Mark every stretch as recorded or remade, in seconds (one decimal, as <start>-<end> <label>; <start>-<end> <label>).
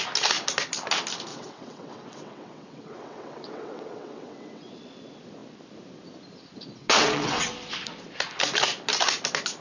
0.0-1.3 recorded; 1.3-4.7 remade; 4.7-6.8 recorded; 6.8-7.5 remade; 7.5-9.6 recorded